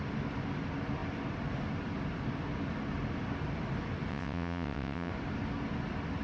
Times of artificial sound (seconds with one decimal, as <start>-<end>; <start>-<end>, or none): 4.1-5.1